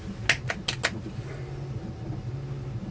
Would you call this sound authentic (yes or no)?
yes